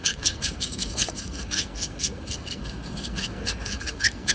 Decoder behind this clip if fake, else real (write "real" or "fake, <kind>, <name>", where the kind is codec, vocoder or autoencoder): fake, codec, SNAC